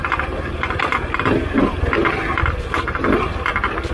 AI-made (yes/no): no